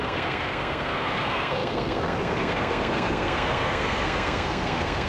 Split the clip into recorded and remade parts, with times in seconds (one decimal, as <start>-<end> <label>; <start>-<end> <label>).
0.0-5.1 remade